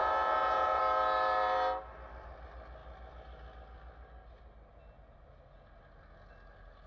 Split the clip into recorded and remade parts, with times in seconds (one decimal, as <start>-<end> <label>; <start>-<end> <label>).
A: 0.0-0.8 remade; 0.8-6.9 recorded